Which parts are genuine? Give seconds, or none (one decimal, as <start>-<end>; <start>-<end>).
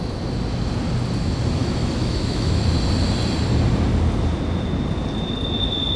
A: 0.0-1.6; 2.6-6.0